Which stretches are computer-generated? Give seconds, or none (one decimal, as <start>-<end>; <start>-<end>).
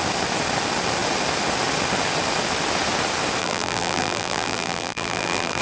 3.4-5.6